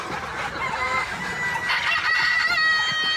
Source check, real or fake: real